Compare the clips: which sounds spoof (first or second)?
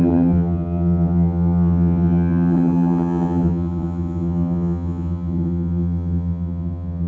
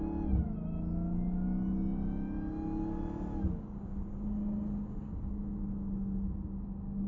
first